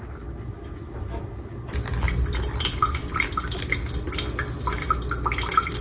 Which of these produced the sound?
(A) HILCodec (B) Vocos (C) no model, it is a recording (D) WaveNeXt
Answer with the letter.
C